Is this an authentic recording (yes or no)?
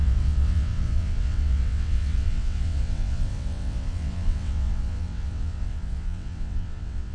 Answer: no